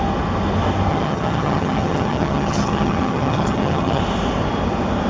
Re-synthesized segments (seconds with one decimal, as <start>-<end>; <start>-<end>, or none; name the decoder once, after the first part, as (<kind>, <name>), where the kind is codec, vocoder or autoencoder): 0.9-4.0 (vocoder, HiFi-GAN)